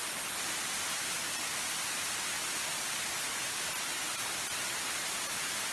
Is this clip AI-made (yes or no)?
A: no